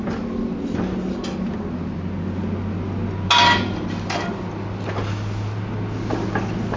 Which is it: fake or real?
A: real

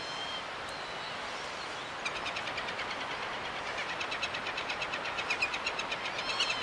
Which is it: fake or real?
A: real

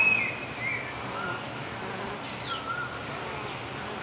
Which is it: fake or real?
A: real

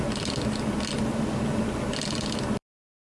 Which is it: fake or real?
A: real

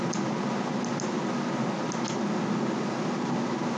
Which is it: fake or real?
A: real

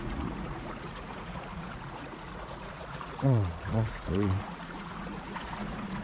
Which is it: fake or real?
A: fake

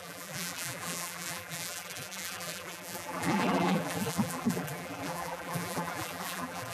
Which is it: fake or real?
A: fake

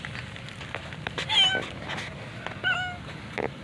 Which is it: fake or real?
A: real